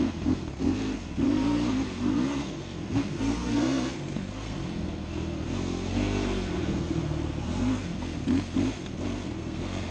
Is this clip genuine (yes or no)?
no